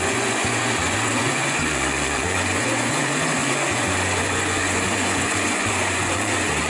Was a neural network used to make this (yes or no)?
yes